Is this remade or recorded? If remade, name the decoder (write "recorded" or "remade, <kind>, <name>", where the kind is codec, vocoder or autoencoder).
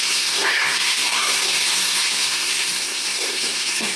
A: remade, codec, SNAC